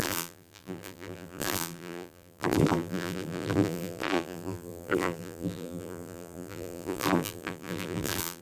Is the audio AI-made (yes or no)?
yes